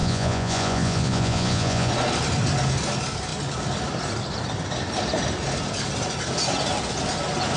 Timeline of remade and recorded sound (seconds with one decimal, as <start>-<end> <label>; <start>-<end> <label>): 0.0-1.9 remade; 1.9-7.6 recorded